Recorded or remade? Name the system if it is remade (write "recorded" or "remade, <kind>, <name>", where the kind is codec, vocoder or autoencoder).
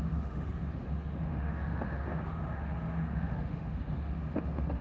remade, autoencoder, DAC-VAE